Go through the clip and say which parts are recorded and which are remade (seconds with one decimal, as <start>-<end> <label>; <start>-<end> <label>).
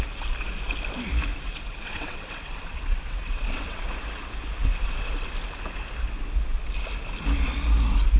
0.0-1.5 recorded; 1.5-3.9 remade; 3.9-4.6 recorded; 4.6-5.1 remade; 5.1-8.2 recorded